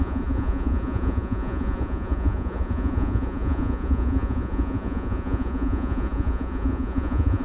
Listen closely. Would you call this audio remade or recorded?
remade